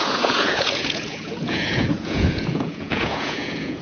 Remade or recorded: remade